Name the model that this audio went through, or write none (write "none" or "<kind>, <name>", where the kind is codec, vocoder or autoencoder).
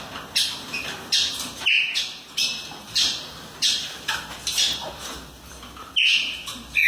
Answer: none